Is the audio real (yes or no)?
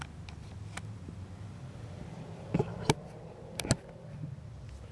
yes